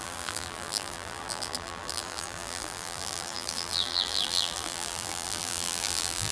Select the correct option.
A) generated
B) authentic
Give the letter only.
A